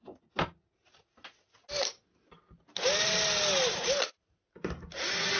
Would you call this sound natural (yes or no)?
yes